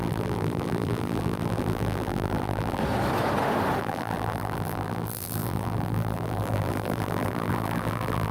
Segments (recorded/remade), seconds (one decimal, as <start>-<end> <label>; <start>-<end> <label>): 0.0-2.8 remade; 2.8-3.8 recorded; 3.8-8.3 remade